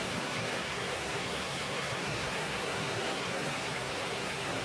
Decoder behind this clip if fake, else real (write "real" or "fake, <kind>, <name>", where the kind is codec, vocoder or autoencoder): fake, codec, SNAC